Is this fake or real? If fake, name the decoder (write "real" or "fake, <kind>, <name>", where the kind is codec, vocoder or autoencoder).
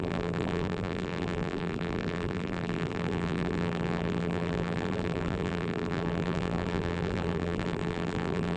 fake, vocoder, BigVGAN v2